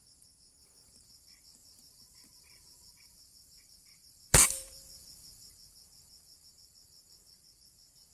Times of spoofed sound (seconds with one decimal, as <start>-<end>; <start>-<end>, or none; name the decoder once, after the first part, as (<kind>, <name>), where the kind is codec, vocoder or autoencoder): 1.6-6.5 (vocoder, BigVGAN v2)